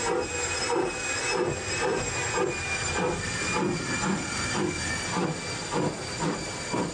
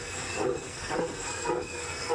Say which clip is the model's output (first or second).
second